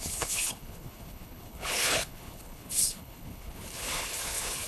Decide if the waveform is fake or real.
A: fake